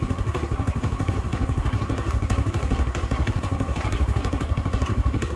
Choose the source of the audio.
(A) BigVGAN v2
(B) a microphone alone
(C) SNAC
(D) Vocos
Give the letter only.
C